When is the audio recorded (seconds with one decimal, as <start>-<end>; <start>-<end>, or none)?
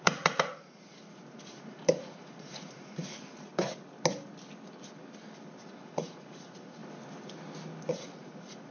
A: 3.5-5.6; 6.8-7.9